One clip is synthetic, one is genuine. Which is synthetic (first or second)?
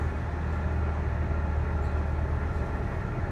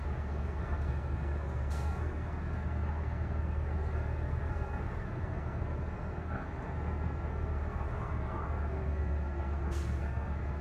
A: second